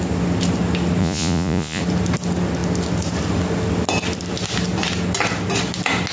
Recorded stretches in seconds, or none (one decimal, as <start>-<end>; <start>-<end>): 0.0-1.0; 1.8-6.1